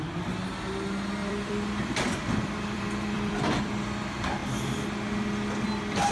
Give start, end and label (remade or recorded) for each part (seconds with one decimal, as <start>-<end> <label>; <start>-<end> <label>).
0.0-1.2 recorded; 1.2-3.6 remade; 3.6-6.1 recorded